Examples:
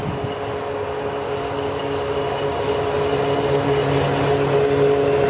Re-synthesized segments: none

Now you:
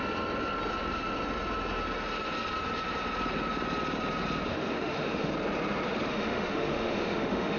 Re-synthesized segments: 4.5-5.3 (autoencoder, DAC-VAE); 6.1-7.6

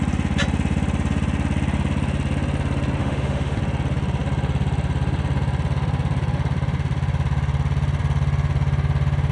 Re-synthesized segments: 3.0-3.6 (autoencoder, DAC-VAE)

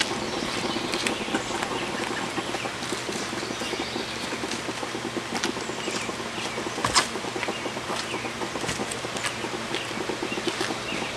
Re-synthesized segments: none

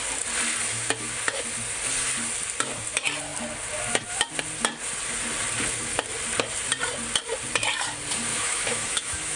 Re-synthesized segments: 8.3-9.4 (autoencoder, DAC-VAE)

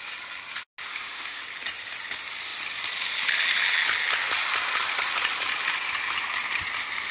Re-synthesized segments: 0.8-1.4 (autoencoder, DAC-VAE)

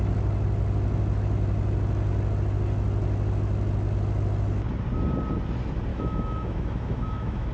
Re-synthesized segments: 5.9-7.5 (autoencoder, DAC-VAE)